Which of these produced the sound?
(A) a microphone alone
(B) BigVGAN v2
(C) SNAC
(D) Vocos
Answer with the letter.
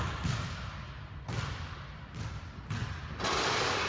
A